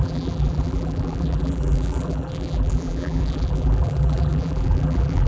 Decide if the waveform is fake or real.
fake